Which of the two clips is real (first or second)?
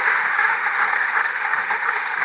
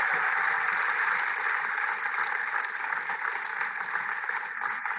second